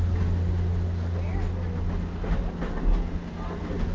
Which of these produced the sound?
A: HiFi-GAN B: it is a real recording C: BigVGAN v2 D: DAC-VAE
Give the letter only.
B